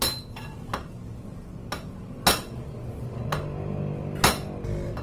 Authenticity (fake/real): real